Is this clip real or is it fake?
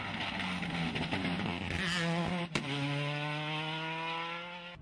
real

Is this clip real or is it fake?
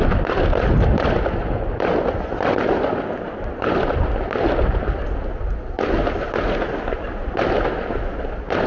real